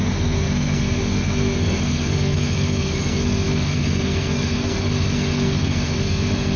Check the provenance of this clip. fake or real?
fake